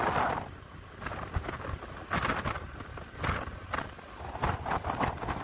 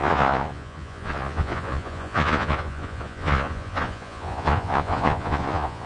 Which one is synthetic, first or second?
second